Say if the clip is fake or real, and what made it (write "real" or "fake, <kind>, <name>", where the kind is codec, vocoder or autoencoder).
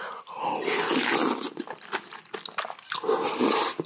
real